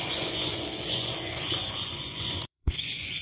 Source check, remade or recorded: remade